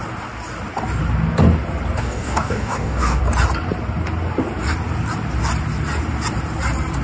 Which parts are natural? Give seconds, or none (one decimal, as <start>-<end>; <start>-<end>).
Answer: 0.0-2.0; 3.2-7.0